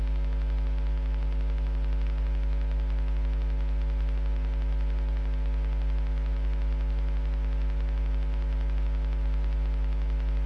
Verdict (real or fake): real